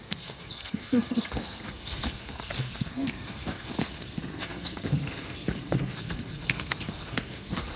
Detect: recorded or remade remade